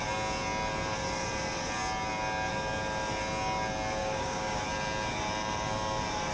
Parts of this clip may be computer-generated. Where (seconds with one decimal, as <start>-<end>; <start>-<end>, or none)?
4.0-4.6